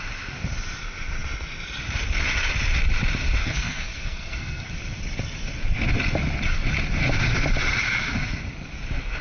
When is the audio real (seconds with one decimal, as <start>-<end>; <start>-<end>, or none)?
0.0-3.4; 4.7-9.2